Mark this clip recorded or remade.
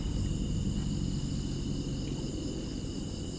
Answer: recorded